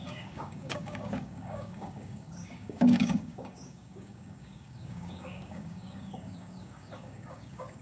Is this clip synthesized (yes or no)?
yes